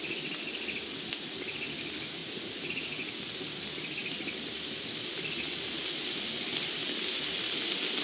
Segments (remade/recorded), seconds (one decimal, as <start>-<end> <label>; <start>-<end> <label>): 0.0-2.2 recorded; 2.2-3.1 remade; 3.1-8.0 recorded